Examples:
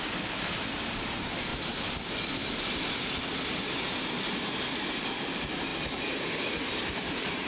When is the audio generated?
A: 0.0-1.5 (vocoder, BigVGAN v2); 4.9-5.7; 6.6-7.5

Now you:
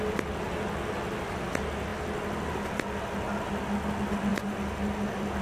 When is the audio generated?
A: 1.9-2.5 (vocoder, BigVGAN v2); 4.3-5.4

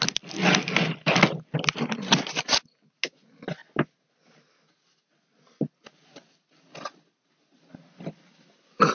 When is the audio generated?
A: none

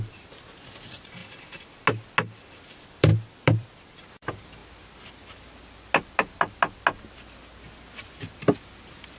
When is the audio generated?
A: 0.0-1.2 (vocoder, BigVGAN v2); 2.7-4.6

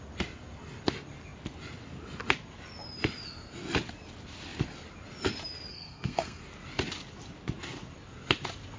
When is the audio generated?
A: 5.7-6.4 (codec, SNAC)

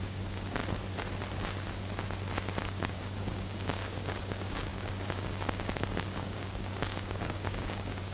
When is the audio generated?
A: 0.0-0.6 (codec, DAC); 2.6-8.1